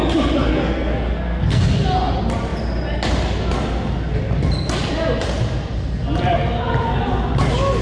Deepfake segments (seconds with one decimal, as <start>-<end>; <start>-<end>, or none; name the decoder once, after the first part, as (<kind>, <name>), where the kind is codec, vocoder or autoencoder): 0.5-1.6 (codec, SNAC)